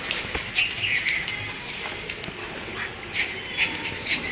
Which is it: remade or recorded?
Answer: recorded